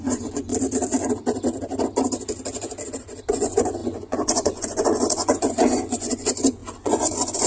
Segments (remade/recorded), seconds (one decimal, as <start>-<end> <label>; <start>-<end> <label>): 0.0-0.5 remade; 0.5-3.3 recorded; 3.3-7.5 remade

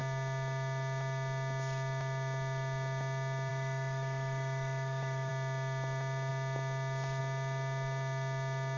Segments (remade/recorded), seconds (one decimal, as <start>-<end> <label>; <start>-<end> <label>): 0.0-3.5 recorded; 3.5-5.3 remade; 5.3-8.8 recorded